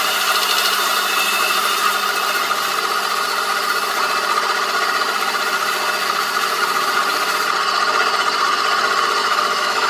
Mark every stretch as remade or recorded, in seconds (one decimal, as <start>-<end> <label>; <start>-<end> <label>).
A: 0.0-9.2 recorded; 9.2-9.9 remade